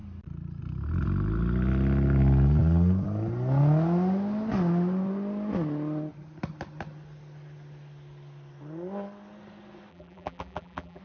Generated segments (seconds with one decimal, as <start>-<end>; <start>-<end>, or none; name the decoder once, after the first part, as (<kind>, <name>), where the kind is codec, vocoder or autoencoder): 9.9-11.0 (vocoder, BigVGAN v2)